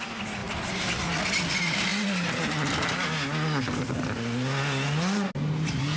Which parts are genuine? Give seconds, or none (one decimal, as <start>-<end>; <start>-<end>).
0.0-0.4; 1.0-6.0